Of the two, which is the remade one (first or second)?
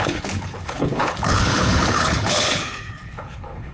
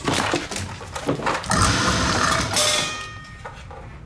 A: first